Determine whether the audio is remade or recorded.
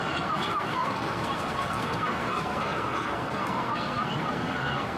remade